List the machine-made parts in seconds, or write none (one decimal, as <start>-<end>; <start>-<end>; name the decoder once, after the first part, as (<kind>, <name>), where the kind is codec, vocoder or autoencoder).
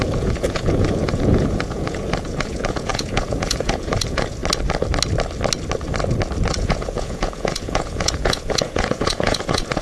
0.0-4.4 (vocoder, Vocos); 6.5-9.8